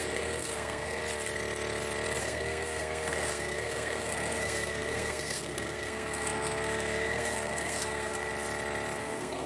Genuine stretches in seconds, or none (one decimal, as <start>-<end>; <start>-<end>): 1.0-2.2; 8.3-9.0